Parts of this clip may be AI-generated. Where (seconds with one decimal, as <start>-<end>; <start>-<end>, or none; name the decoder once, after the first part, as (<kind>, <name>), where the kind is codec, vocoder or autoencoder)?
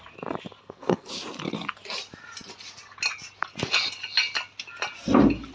0.6-1.1 (codec, SNAC)